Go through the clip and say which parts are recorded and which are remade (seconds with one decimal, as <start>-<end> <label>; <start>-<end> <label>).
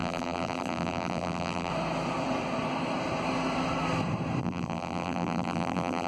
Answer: 0.0-1.7 remade; 1.7-4.4 recorded; 4.4-6.1 remade